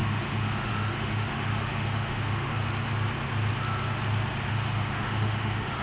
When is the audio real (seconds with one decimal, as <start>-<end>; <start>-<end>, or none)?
2.5-4.5